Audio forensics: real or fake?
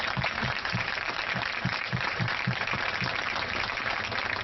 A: fake